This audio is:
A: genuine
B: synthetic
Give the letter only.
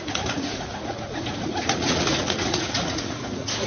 B